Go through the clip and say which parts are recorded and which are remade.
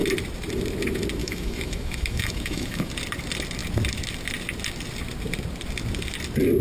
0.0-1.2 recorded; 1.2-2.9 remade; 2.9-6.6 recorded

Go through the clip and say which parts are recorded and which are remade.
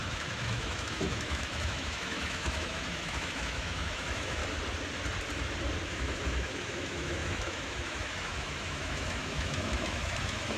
0.0-4.4 remade; 4.4-5.9 recorded; 5.9-10.6 remade